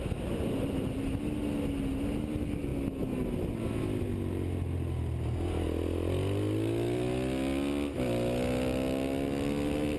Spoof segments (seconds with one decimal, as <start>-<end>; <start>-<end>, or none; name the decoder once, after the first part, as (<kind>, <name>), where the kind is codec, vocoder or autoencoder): none